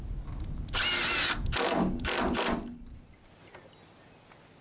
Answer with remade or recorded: recorded